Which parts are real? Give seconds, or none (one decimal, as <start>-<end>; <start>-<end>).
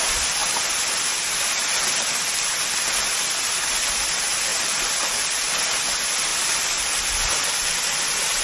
0.0-8.4